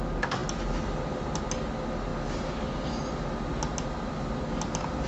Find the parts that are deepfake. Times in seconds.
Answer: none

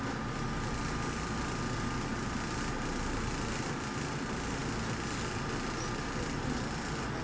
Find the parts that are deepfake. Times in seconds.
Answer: none

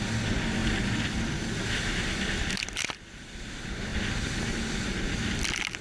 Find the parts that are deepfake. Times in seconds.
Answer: none

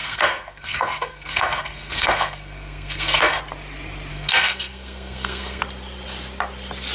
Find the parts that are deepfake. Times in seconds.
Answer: 0.0-3.4 (codec, SNAC); 4.1-5.6

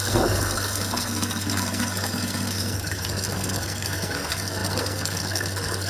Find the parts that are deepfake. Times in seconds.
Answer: 0.0-5.9 (codec, SNAC)

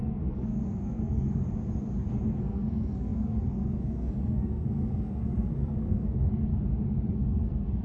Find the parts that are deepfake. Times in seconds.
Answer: 0.0-1.4 (codec, SNAC); 2.4-6.5; 7.1-7.8

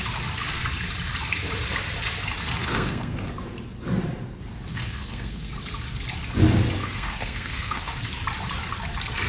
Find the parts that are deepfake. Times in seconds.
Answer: 2.6-3.3 (codec, SNAC); 4.7-5.5; 6.8-7.9